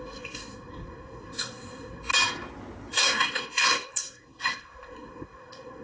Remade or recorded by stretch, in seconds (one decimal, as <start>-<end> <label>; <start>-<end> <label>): 0.0-2.1 remade; 2.1-2.9 recorded; 2.9-5.8 remade